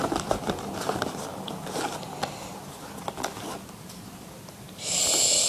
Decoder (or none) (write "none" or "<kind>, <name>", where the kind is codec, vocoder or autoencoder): none